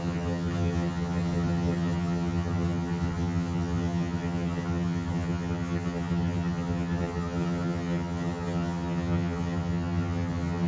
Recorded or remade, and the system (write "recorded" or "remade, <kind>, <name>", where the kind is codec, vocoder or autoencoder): remade, vocoder, HiFi-GAN